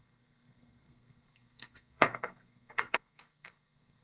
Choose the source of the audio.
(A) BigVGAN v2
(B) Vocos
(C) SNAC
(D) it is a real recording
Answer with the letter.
C